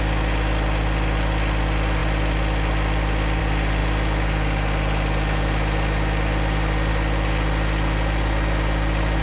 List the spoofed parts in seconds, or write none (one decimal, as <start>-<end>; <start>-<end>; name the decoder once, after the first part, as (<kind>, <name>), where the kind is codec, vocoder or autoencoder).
none